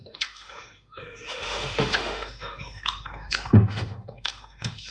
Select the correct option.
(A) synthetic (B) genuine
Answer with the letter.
A